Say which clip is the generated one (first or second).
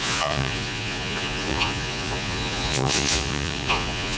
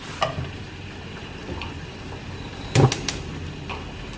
first